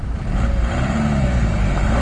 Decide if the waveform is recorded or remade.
remade